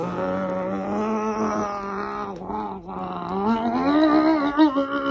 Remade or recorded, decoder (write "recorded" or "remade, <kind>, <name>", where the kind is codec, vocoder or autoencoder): recorded